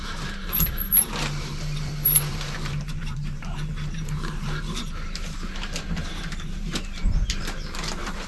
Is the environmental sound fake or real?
fake